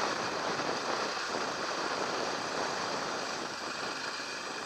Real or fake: fake